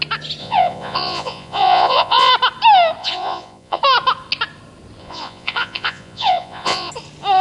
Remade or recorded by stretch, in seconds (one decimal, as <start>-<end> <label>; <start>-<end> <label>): 0.0-0.4 recorded; 0.4-2.3 remade; 2.3-3.0 recorded; 3.0-3.8 remade; 3.8-5.0 recorded; 5.0-6.9 remade; 6.9-7.4 recorded

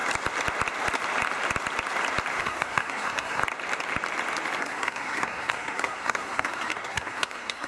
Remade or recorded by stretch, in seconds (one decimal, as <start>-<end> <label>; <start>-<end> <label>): 0.0-2.4 recorded; 2.4-3.4 remade; 3.4-4.6 recorded; 4.6-7.7 remade

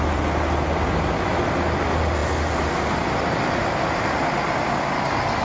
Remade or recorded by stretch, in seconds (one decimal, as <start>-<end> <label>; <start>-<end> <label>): 0.0-5.4 recorded

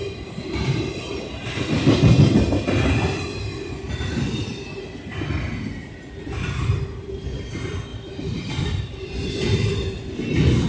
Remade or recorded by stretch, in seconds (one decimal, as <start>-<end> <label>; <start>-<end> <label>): 0.0-10.7 recorded

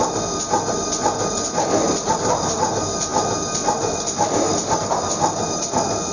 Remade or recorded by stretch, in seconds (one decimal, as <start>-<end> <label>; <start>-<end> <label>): 0.0-6.1 recorded

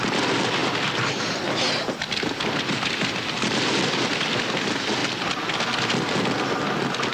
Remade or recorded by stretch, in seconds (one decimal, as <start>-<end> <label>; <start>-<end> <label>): 0.0-7.1 recorded

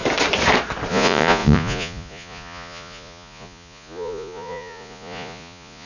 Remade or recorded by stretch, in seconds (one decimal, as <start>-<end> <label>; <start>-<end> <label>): 0.0-0.9 recorded; 0.9-5.9 remade